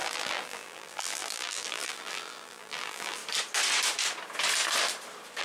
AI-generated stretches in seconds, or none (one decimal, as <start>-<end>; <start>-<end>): 0.0-3.2